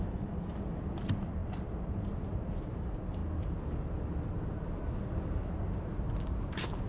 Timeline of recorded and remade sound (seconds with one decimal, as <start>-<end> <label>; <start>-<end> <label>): 0.0-6.9 recorded